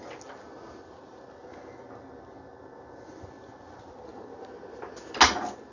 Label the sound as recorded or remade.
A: recorded